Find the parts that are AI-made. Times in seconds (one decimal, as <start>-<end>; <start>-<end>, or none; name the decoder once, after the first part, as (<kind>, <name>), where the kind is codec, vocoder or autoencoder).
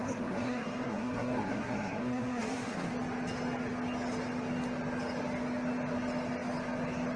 0.0-2.9 (codec, SNAC)